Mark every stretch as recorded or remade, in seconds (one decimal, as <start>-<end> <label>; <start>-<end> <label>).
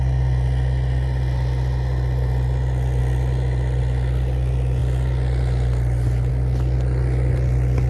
0.0-7.9 recorded